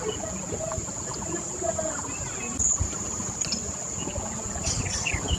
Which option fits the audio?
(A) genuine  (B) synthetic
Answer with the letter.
A